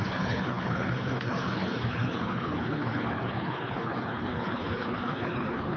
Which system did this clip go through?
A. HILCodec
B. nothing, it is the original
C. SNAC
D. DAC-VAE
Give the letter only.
A